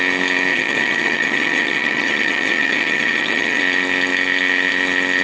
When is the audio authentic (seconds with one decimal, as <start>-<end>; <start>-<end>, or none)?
0.0-0.5; 3.6-5.2